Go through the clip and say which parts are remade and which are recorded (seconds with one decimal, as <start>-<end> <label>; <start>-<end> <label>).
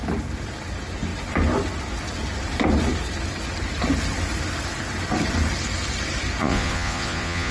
0.0-6.4 recorded; 6.4-7.5 remade